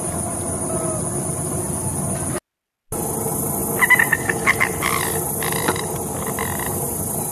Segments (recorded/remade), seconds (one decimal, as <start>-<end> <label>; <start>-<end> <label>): 0.0-7.3 recorded